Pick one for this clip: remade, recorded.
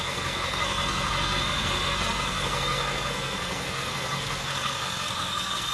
remade